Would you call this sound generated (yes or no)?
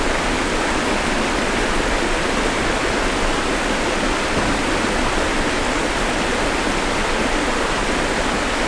no